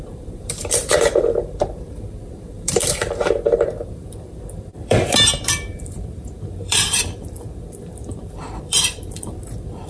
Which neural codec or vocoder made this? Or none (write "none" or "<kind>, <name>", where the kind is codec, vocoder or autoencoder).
vocoder, BigVGAN v2